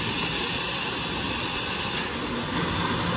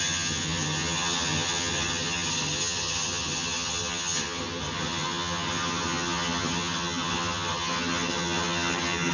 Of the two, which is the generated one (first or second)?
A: second